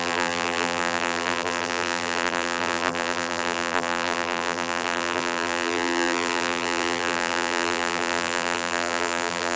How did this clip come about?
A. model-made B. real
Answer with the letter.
A